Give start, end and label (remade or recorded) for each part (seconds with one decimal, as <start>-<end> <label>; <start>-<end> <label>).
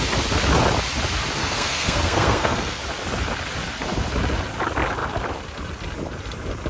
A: 0.0-1.4 recorded; 1.4-2.8 remade; 2.8-6.7 recorded